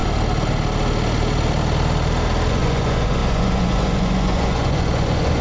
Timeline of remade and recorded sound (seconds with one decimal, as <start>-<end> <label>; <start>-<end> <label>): 0.0-2.5 recorded; 2.5-5.4 remade

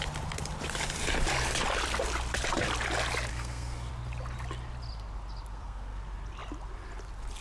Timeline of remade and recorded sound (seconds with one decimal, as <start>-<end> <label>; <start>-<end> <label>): 0.0-3.3 recorded; 3.3-3.9 remade; 3.9-5.5 recorded; 5.5-6.0 remade; 6.0-7.4 recorded